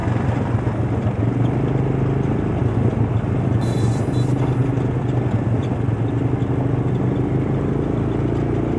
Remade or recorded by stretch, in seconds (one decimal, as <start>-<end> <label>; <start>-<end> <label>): 0.0-8.8 recorded